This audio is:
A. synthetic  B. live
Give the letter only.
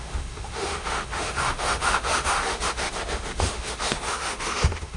A